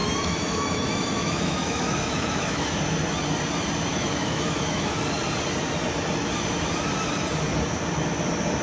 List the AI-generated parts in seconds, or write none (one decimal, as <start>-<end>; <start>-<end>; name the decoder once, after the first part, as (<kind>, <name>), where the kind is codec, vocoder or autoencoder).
0.0-2.8 (autoencoder, DAC-VAE); 3.9-5.0